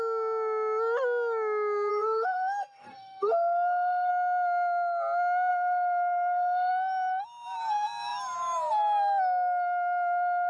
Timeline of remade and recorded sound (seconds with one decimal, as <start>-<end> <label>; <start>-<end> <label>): 0.0-1.9 recorded; 1.9-4.1 remade; 4.1-5.5 recorded; 5.5-6.7 remade; 6.7-10.5 recorded